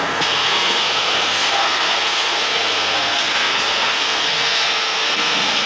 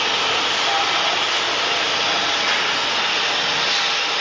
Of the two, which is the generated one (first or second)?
first